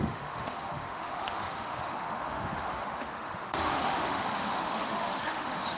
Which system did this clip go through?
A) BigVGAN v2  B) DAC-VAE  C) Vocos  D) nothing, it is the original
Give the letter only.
B